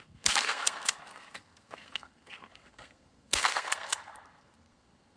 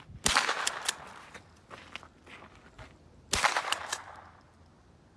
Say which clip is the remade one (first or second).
first